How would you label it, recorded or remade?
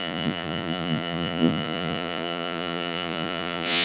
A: remade